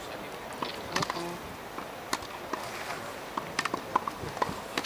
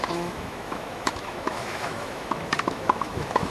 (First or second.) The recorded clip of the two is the first